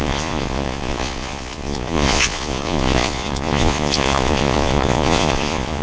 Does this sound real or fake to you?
fake